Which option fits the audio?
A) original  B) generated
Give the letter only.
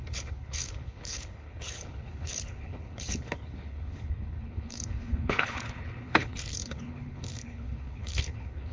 B